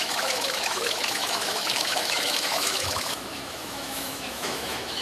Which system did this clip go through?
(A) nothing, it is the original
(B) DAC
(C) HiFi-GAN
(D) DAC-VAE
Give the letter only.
D